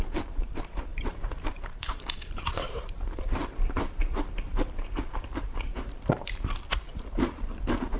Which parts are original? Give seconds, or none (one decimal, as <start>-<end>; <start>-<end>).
3.4-4.3